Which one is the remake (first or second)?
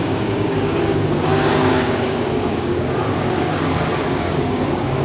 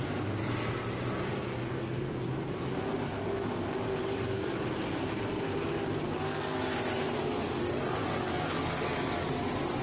first